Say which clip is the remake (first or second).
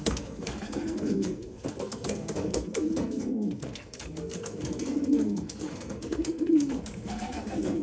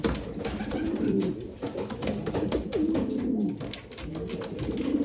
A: first